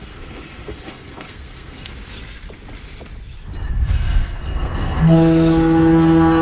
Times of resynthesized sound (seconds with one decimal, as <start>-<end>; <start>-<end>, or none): 0.0-1.9; 3.7-6.4